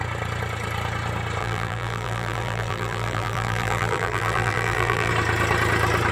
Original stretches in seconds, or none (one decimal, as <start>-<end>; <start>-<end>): 0.0-1.4; 5.1-6.1